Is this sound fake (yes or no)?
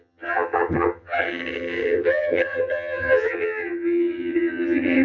yes